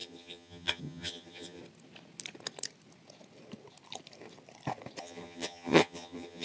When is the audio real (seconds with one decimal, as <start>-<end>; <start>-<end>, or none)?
1.6-5.0